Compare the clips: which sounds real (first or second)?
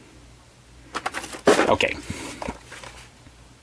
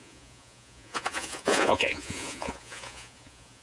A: first